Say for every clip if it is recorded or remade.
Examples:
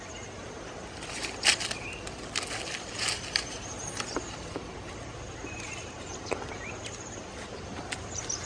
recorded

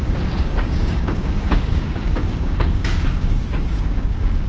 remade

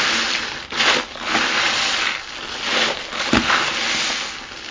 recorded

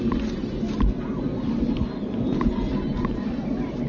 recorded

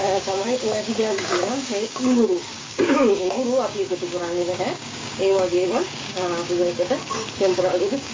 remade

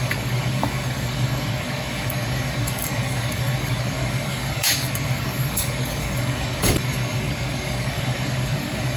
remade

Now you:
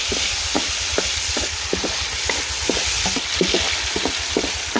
recorded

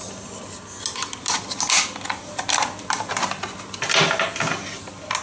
recorded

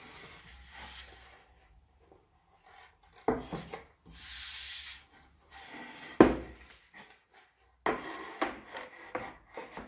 recorded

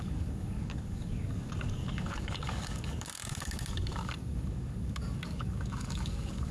remade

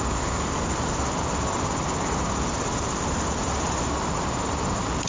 recorded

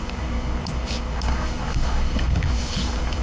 remade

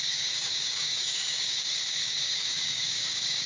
remade